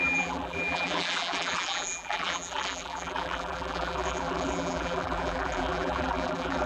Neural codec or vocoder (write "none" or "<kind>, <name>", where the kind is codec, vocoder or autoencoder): vocoder, BigVGAN v2